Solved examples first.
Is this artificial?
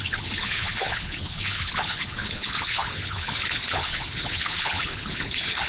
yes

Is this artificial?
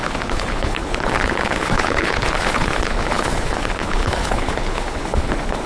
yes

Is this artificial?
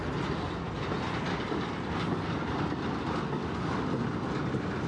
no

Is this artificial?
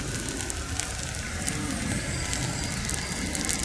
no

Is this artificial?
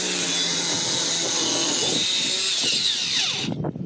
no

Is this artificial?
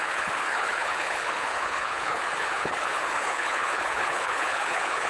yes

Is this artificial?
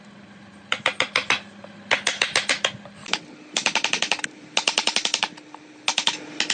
no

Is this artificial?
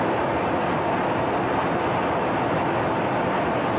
no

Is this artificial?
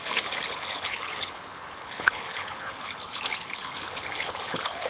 yes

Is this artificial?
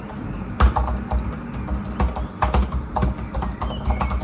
no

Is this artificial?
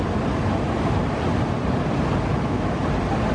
no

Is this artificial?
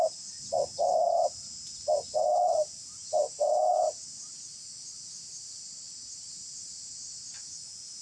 no